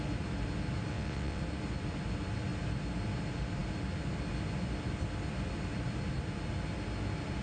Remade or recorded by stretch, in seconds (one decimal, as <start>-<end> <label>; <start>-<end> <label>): 0.0-0.9 recorded; 0.9-1.4 remade; 1.4-7.4 recorded